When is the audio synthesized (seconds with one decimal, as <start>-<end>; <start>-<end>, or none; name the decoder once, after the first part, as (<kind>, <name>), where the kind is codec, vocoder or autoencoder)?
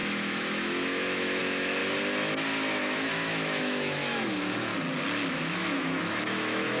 0.0-1.8 (autoencoder, DAC-VAE); 2.8-4.7; 5.3-6.8